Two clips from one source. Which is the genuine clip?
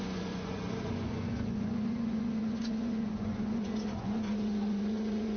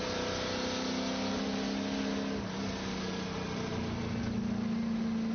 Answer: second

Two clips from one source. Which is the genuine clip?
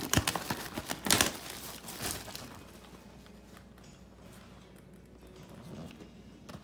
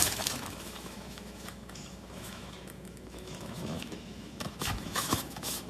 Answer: first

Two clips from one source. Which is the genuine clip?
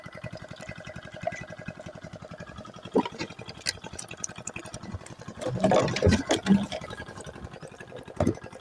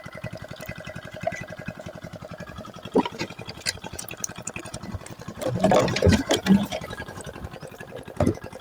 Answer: first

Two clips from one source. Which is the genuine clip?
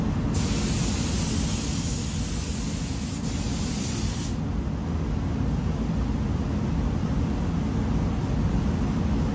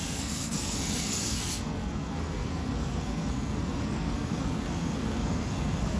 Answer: first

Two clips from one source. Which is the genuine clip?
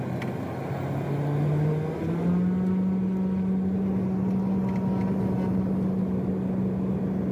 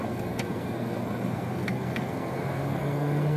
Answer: first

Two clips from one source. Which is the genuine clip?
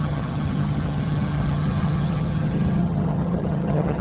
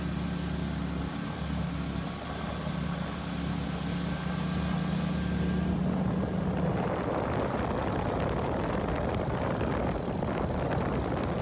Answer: second